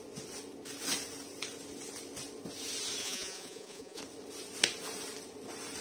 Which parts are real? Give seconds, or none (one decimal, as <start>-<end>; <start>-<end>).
0.0-3.0; 4.0-5.8